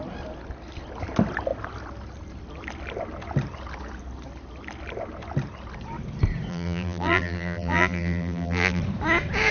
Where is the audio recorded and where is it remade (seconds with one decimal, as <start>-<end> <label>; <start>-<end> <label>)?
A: 0.0-6.5 recorded; 6.5-8.8 remade; 8.8-9.5 recorded